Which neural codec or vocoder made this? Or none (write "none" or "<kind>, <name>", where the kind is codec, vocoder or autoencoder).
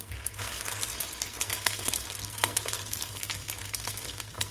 codec, SNAC